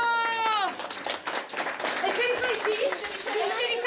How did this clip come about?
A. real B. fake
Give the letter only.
A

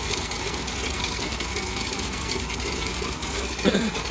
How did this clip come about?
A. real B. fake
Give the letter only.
B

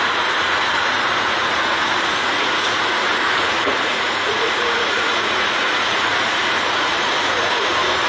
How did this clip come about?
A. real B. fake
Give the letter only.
B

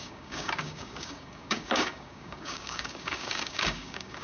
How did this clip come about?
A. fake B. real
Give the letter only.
A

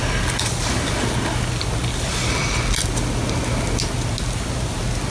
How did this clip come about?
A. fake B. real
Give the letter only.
B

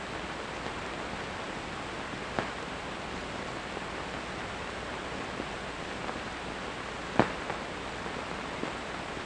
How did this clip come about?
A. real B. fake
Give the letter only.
A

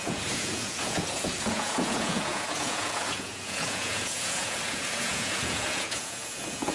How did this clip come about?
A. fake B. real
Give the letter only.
A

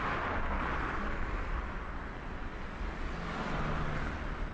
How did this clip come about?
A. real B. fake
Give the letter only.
A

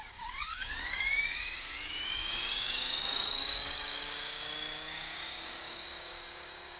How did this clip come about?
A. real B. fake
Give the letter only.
B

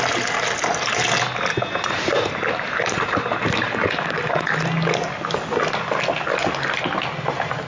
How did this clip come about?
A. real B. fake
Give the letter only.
A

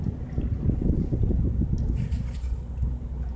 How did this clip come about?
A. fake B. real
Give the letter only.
B